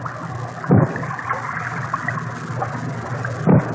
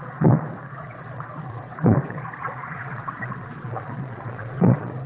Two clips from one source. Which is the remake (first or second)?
second